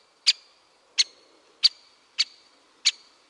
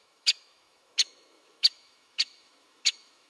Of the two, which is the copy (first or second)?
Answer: second